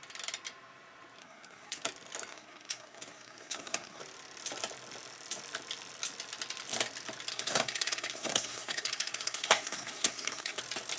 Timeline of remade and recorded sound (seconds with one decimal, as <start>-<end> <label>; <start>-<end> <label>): 0.0-1.2 recorded; 1.2-1.8 remade; 1.8-2.3 recorded; 2.3-4.0 remade; 4.0-7.3 recorded; 7.3-10.6 remade; 10.6-11.0 recorded